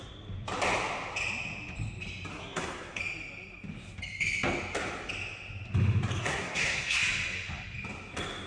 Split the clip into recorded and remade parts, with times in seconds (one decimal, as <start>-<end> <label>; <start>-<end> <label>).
0.0-2.3 recorded; 2.3-3.0 remade; 3.0-6.2 recorded; 6.2-7.0 remade; 7.0-8.5 recorded